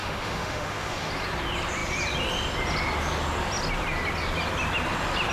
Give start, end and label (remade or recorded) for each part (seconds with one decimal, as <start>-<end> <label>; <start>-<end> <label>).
0.0-1.1 remade; 1.1-5.3 recorded